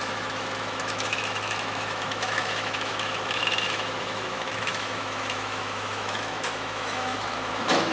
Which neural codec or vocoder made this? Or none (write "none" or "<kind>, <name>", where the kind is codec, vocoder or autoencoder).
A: autoencoder, DAC-VAE